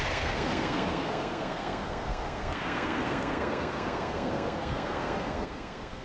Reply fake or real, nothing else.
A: fake